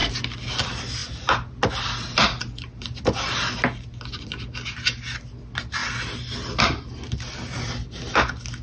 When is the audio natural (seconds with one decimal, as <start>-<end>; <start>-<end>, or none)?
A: 0.0-8.6